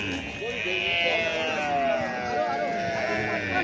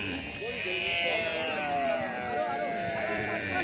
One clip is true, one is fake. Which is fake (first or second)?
second